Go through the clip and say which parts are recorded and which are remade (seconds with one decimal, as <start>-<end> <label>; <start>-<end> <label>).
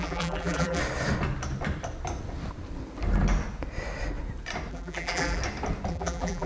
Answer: 0.0-0.8 remade; 0.8-4.7 recorded; 4.7-5.4 remade; 5.4-5.9 recorded; 5.9-6.5 remade